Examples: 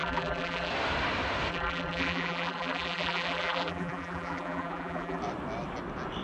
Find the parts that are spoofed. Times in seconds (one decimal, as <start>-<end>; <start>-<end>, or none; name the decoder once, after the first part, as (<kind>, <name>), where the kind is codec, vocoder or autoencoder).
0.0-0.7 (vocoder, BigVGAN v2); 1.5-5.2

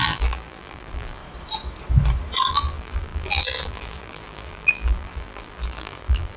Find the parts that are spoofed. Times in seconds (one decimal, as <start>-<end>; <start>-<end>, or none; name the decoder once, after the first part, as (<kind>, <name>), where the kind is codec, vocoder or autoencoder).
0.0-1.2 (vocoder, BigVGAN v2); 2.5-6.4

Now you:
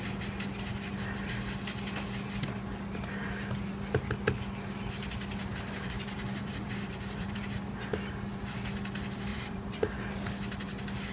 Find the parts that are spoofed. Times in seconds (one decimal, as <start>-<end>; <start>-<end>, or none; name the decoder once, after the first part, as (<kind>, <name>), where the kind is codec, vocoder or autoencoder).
5.4-7.4 (vocoder, BigVGAN v2); 9.3-9.9

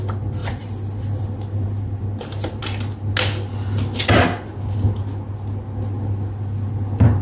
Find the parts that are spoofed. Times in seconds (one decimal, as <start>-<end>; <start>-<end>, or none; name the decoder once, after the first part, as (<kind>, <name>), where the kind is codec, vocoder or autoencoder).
0.4-2.6 (vocoder, BigVGAN v2)